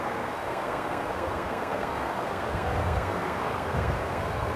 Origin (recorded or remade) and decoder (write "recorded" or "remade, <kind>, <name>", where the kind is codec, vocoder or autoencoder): remade, codec, SNAC